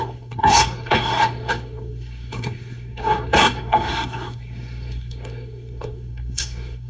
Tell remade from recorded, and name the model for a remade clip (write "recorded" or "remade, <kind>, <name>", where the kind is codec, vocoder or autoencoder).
remade, codec, SNAC